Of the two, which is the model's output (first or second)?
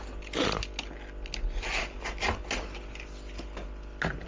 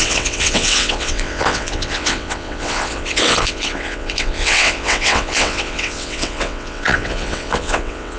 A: second